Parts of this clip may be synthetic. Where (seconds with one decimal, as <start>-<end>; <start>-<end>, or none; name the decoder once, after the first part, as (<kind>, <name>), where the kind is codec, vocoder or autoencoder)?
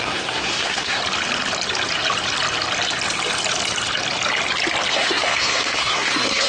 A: 0.0-1.0 (codec, SNAC); 4.9-6.5